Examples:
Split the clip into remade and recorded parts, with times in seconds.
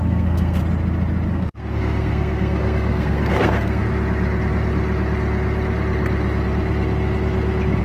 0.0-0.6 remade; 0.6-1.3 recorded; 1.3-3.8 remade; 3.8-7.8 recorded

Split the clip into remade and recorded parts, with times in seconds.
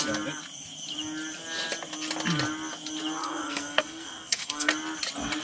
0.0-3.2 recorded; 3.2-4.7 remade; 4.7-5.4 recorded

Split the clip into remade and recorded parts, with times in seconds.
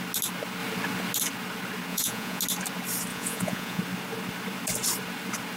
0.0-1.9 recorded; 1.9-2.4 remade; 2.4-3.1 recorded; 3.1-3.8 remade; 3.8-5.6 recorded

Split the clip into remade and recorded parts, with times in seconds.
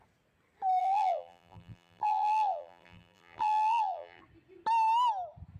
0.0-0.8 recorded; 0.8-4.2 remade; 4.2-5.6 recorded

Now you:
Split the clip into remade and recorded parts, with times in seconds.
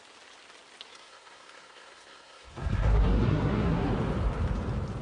0.0-0.9 recorded; 0.9-3.9 remade; 3.9-5.0 recorded